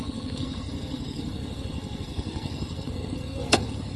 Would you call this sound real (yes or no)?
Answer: no